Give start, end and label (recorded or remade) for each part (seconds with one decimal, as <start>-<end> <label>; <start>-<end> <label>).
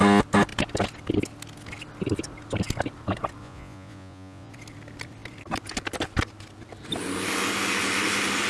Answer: 0.0-3.4 recorded; 3.4-4.5 remade; 4.5-8.5 recorded